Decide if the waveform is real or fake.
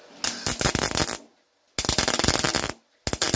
real